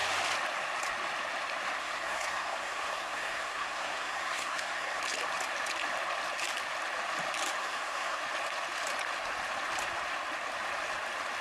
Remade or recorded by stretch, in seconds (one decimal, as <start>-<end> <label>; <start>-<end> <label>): 0.0-1.8 recorded; 1.8-5.0 remade; 5.0-7.6 recorded; 7.6-8.2 remade; 8.2-11.4 recorded